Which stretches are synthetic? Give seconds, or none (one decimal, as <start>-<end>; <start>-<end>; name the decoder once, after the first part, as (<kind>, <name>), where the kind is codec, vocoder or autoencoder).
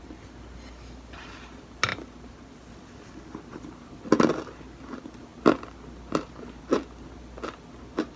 none